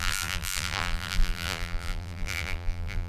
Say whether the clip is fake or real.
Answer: fake